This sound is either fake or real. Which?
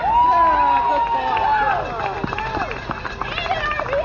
real